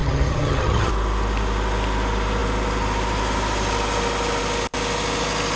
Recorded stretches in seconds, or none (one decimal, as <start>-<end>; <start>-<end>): 0.9-5.5